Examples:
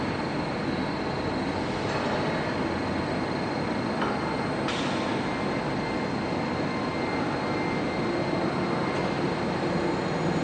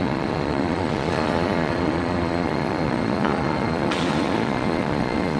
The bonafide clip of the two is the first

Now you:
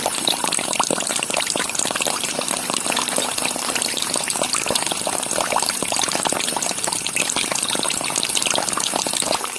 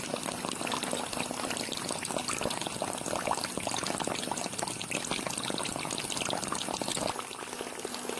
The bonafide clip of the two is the second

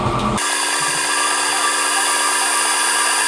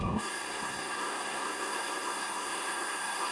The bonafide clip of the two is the first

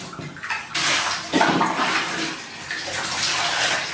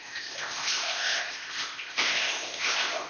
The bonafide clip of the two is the first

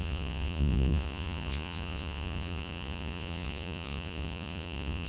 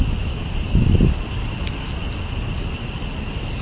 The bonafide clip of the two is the second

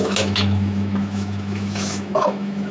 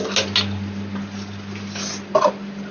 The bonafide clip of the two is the second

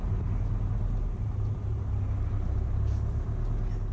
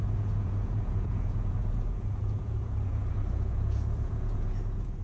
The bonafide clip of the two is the first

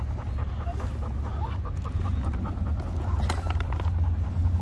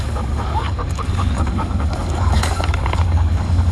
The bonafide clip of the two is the first